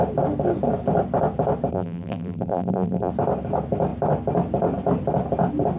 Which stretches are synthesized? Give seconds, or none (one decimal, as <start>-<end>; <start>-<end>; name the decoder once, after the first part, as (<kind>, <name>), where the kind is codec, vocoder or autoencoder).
1.7-3.1 (vocoder, BigVGAN v2)